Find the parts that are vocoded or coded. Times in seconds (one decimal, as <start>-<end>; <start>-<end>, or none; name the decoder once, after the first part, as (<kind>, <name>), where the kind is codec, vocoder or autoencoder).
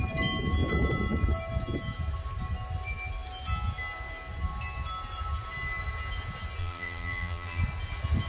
6.6-7.6 (vocoder, BigVGAN v2)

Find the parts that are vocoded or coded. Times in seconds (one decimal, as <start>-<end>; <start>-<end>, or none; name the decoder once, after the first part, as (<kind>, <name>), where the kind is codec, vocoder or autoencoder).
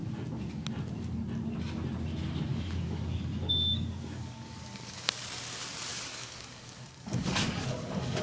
2.5-5.1 (codec, DAC); 5.9-8.2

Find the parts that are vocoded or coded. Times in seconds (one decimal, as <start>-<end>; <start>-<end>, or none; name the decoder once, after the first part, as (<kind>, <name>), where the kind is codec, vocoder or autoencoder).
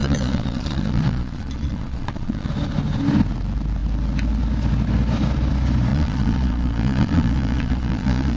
0.0-2.5 (vocoder, Vocos); 5.9-8.4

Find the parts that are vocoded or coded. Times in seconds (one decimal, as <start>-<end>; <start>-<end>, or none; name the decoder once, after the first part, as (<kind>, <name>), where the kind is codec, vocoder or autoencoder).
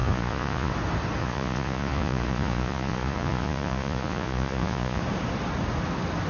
0.0-0.7 (vocoder, Vocos); 1.2-5.0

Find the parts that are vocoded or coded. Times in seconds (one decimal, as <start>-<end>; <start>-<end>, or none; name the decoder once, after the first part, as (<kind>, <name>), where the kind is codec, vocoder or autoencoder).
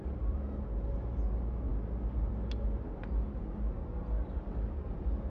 none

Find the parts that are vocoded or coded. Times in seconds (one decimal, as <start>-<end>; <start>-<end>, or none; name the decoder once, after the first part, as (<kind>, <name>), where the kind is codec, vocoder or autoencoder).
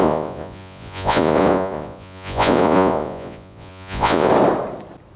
0.0-4.3 (vocoder, Vocos)